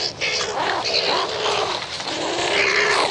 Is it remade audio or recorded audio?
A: recorded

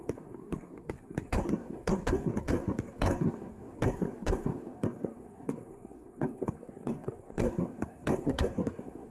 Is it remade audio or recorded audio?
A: remade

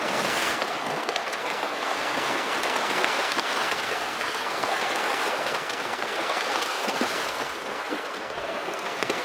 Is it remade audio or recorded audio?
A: remade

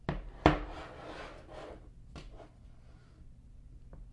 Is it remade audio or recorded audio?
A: recorded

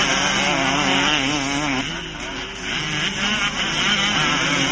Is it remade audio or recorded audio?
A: recorded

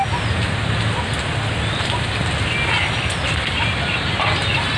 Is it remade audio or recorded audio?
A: recorded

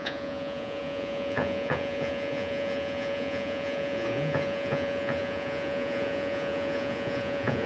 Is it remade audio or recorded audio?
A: remade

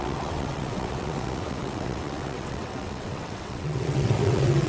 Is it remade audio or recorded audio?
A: remade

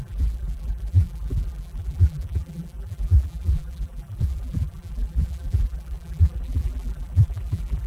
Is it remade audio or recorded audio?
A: remade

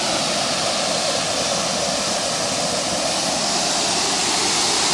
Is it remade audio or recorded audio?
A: recorded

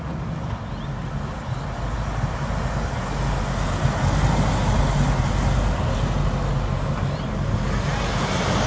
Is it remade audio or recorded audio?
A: recorded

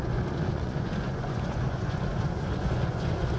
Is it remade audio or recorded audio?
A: remade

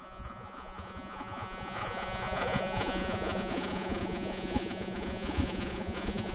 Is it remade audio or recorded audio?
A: remade